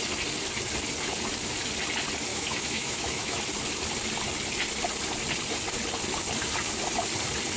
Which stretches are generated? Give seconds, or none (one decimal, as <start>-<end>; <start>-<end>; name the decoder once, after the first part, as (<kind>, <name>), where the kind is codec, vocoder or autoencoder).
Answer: 2.3-3.4 (autoencoder, DAC-VAE)